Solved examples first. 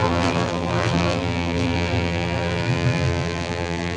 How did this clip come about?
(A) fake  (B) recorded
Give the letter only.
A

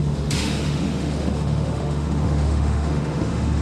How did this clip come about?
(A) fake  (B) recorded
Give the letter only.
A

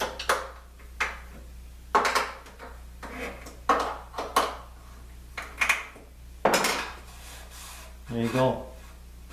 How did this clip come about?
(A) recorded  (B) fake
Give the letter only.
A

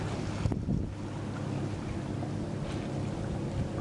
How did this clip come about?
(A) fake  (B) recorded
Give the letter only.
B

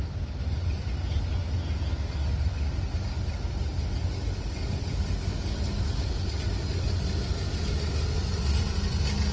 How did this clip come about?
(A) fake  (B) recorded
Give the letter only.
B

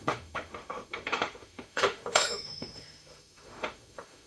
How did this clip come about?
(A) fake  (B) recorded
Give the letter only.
A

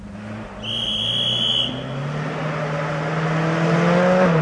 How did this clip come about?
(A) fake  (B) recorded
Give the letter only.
B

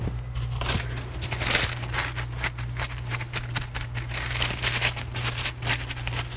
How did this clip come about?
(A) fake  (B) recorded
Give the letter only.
B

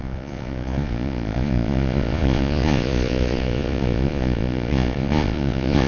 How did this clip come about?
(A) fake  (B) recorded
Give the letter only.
A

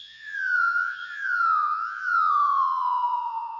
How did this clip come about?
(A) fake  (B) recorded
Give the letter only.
A